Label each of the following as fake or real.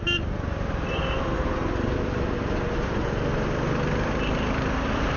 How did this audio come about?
real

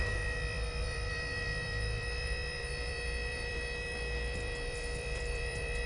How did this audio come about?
fake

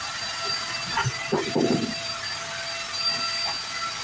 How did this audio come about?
fake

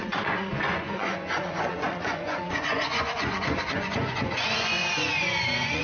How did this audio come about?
fake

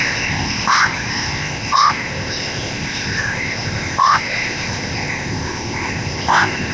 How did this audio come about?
fake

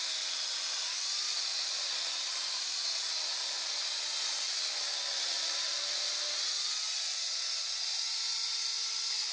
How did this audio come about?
real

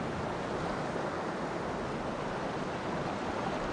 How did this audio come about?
real